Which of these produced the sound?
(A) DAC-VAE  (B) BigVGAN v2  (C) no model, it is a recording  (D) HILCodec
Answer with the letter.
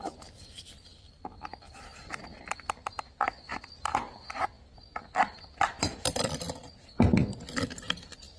C